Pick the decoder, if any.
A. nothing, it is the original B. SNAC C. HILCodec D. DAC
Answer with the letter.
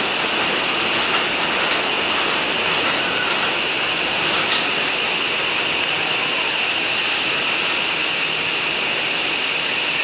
A